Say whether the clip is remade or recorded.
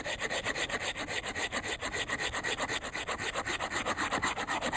recorded